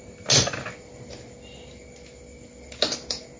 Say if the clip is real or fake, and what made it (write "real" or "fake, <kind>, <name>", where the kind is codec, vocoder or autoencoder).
real